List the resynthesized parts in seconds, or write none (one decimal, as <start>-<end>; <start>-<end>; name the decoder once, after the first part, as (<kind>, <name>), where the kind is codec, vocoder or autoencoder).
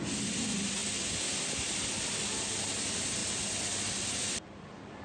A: none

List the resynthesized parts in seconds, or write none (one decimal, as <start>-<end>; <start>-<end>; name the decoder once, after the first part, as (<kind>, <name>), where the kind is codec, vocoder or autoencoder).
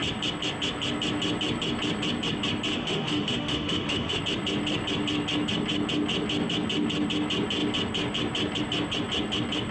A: 2.7-4.2 (autoencoder, DAC-VAE)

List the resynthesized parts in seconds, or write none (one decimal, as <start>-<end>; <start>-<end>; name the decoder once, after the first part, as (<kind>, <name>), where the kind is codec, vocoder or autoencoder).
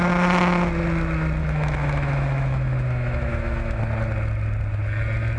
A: 1.4-3.8 (autoencoder, DAC-VAE)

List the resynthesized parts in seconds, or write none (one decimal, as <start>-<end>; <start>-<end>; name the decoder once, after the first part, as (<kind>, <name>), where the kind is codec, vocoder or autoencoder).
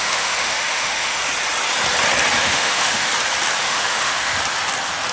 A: 0.0-1.2 (autoencoder, DAC-VAE); 2.4-3.1; 3.6-4.3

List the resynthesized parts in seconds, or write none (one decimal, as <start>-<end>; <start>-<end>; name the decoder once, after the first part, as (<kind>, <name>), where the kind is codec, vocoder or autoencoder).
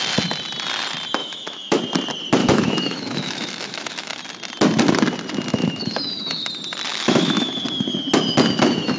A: 1.2-1.8 (autoencoder, DAC-VAE); 2.4-4.2; 5.6-6.5; 6.9-7.5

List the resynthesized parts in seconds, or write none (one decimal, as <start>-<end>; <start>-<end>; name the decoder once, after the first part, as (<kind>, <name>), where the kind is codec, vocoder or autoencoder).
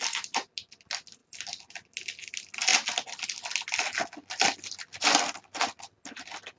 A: none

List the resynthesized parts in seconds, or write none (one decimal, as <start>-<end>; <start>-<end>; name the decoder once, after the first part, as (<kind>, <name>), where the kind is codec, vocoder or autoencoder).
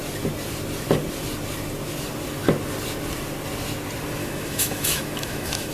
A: 4.2-5.7 (autoencoder, DAC-VAE)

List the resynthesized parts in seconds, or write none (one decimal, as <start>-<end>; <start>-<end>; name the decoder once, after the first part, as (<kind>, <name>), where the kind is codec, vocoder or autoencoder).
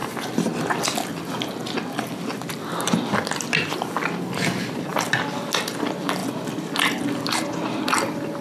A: none